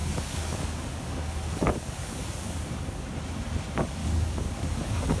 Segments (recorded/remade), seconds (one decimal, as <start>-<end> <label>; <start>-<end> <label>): 0.0-3.1 remade; 3.1-4.0 recorded; 4.0-5.2 remade